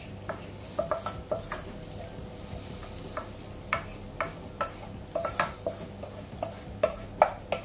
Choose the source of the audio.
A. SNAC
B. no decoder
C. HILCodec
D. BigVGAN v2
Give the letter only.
B